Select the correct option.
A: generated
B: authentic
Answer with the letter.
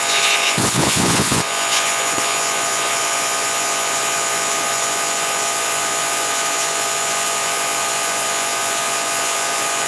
A